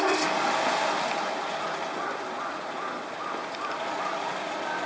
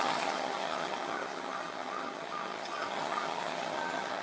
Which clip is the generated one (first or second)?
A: second